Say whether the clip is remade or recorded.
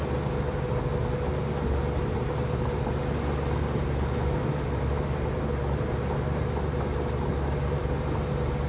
recorded